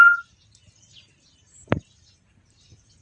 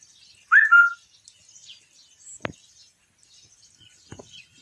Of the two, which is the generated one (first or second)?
first